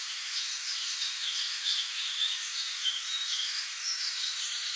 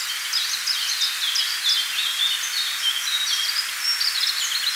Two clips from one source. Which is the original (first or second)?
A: second